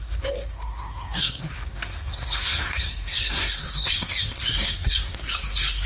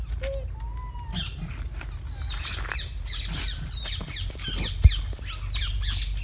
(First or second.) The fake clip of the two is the first